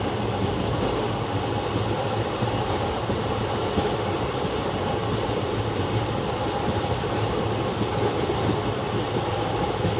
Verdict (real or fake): real